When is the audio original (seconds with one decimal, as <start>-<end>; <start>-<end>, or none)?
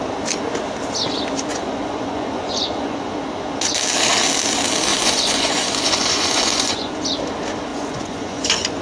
0.0-1.5; 3.1-4.9; 6.9-7.7